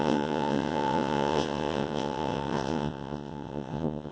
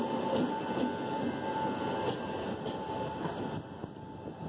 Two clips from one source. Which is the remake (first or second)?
first